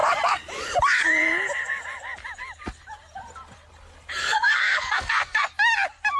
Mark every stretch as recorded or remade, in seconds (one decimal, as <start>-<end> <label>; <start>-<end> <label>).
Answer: 0.0-4.2 recorded; 4.2-5.5 remade; 5.5-6.2 recorded